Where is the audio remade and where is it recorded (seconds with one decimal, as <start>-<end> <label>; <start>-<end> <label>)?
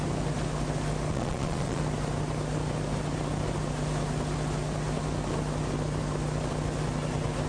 0.0-1.1 recorded; 1.1-1.8 remade; 1.8-7.5 recorded